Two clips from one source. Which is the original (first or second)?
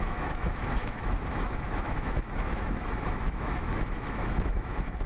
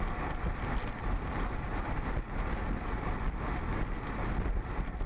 second